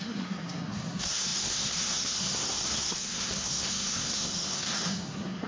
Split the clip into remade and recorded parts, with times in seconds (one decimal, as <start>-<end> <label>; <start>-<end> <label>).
0.0-5.5 remade

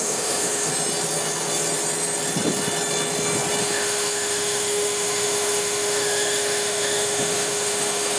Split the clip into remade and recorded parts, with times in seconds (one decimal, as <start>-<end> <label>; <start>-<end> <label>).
0.0-0.7 remade; 0.7-3.6 recorded; 3.6-8.2 remade

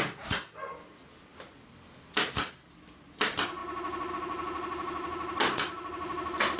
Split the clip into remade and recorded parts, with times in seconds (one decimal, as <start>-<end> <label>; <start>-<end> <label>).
0.0-6.6 recorded

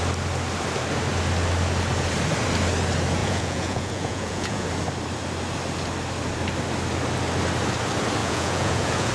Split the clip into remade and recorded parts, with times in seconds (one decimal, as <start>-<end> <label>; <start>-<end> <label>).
0.0-3.2 recorded; 3.2-4.7 remade; 4.7-8.2 recorded; 8.2-9.1 remade

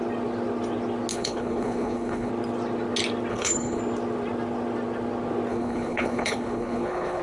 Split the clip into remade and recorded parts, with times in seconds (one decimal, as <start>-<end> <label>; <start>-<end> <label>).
0.0-1.1 recorded; 1.1-2.3 remade; 2.3-3.3 recorded; 3.3-3.8 remade; 3.8-5.5 recorded; 5.5-7.2 remade